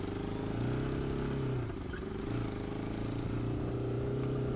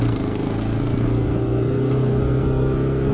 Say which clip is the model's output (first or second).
second